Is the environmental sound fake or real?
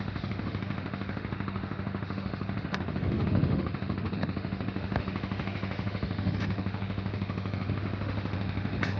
fake